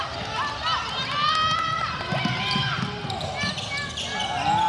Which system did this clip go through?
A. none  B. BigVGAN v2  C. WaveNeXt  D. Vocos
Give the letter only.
A